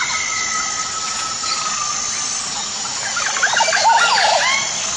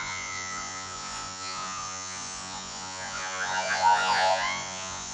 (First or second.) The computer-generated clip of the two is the second